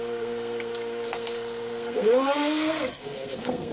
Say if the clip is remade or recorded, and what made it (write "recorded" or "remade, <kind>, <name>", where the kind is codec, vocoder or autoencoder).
remade, codec, SNAC